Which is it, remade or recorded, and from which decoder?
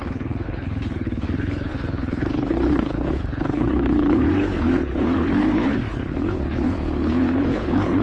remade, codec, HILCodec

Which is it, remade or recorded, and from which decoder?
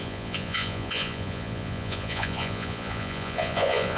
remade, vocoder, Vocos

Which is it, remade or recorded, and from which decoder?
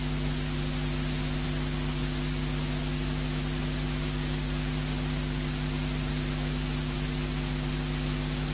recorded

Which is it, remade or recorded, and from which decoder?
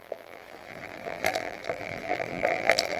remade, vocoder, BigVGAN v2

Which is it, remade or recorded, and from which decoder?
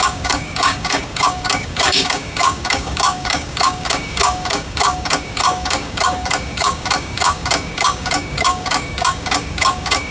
remade, codec, DAC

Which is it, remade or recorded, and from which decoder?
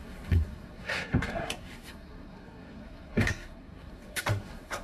remade, codec, SNAC